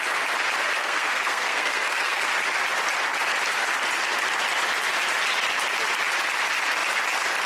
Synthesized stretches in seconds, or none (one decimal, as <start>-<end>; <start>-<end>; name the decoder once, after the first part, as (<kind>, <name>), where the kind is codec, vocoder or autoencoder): 0.8-2.3 (codec, SNAC)